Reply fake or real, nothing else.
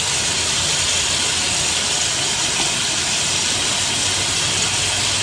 real